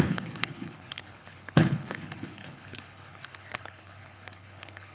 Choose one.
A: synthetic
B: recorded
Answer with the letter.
A